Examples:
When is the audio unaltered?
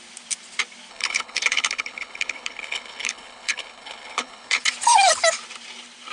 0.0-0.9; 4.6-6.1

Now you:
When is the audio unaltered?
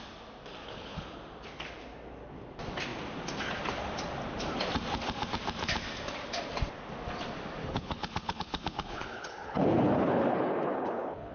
0.0-0.6; 1.2-7.6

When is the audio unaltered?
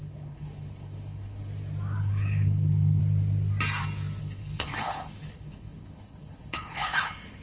1.5-2.0; 3.0-4.2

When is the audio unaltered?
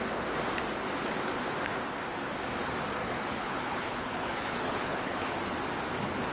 0.0-3.0; 5.4-6.3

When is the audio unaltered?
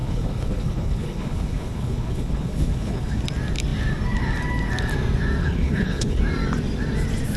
3.2-5.4; 6.2-7.4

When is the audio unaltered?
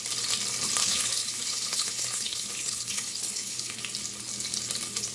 0.0-0.8; 3.8-5.1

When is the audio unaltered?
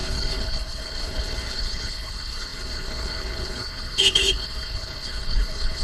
none